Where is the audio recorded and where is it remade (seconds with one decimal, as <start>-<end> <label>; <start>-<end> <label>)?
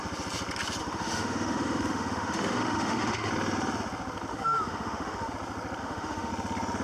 0.0-0.8 recorded; 0.8-3.3 remade; 3.3-4.3 recorded; 4.3-5.3 remade; 5.3-5.8 recorded; 5.8-6.3 remade; 6.3-6.8 recorded